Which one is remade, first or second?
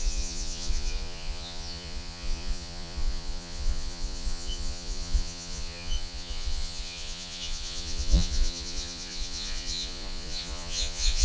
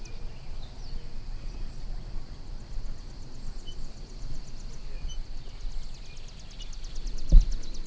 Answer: first